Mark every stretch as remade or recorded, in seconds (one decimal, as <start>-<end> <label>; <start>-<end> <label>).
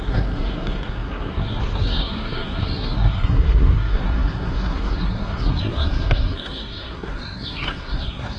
0.0-8.4 remade